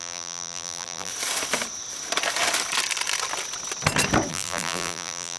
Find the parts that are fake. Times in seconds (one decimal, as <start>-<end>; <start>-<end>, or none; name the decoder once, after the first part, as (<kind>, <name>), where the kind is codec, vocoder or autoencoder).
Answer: 0.0-1.1 (vocoder, BigVGAN v2); 4.3-5.4